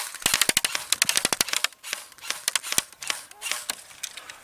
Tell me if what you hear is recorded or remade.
recorded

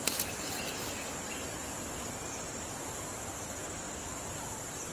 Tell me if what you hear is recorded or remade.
recorded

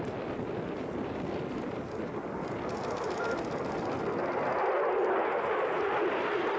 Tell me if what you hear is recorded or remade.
recorded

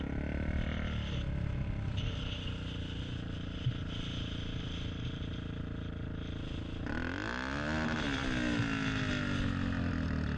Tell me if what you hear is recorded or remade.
recorded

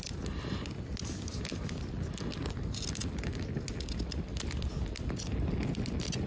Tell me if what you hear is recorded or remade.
recorded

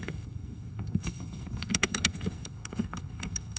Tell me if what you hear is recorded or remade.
remade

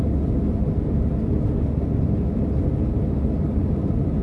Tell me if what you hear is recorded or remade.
recorded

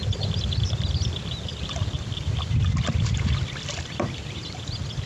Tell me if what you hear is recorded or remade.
recorded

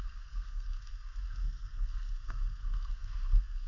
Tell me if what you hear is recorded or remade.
remade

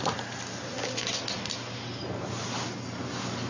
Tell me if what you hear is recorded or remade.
recorded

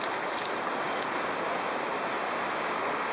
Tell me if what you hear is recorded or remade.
recorded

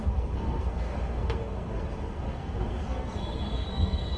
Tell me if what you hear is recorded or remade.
remade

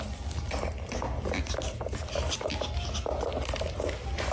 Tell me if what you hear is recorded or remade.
recorded